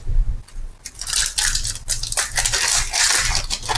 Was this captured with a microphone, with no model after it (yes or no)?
yes